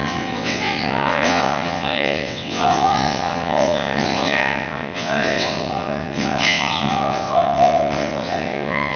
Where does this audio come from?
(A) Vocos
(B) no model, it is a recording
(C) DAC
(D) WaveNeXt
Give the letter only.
D